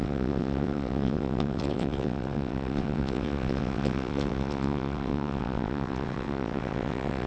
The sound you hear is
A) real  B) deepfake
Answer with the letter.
B